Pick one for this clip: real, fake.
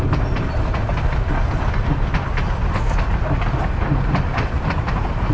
real